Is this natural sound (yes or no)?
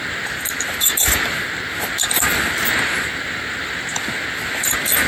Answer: yes